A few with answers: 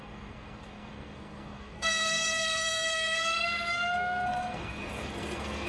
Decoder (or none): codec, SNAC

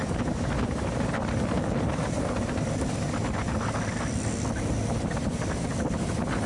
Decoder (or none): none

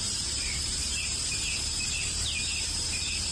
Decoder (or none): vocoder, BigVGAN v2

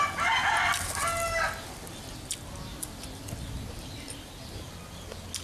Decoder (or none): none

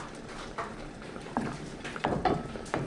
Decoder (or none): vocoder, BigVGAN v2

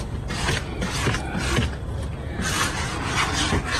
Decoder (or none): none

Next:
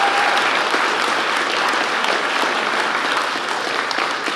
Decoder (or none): none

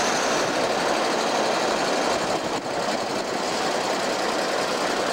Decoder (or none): none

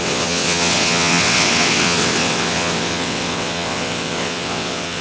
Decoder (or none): vocoder, WaveNeXt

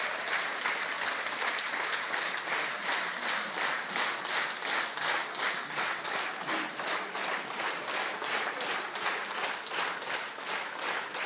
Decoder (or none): none